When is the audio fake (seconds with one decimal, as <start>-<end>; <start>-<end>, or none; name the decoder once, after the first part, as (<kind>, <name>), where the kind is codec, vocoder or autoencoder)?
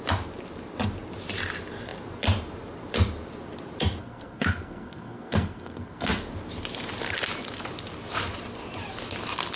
4.0-6.1 (codec, SNAC)